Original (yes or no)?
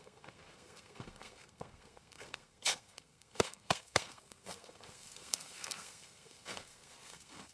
no